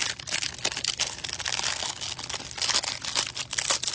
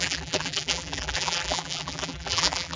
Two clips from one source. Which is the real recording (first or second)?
first